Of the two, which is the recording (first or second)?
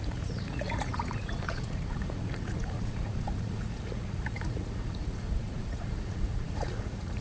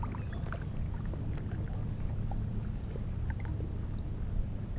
second